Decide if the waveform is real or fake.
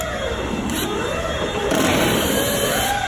real